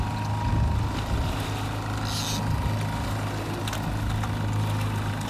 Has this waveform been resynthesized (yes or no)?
no